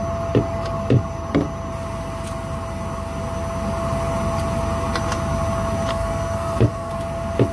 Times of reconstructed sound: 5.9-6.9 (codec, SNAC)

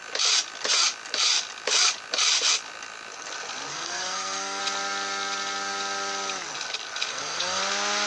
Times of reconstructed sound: 3.7-4.6 (codec, SNAC); 7.1-7.6

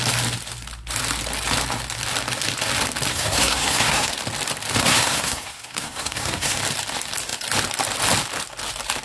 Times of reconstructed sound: 3.1-4.1 (codec, SNAC); 4.8-6.6